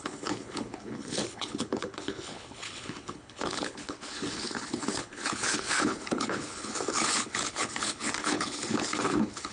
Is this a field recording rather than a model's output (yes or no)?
no